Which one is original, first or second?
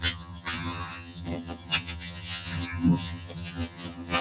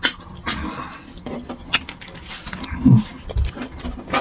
second